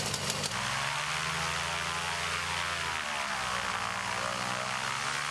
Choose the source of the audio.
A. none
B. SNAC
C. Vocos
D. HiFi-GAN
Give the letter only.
A